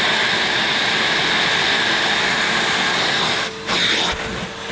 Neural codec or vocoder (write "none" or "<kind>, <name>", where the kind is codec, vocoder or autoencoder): none